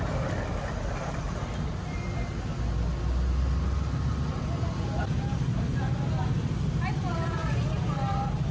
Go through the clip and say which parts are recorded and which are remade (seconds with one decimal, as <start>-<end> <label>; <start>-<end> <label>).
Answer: 0.0-8.5 recorded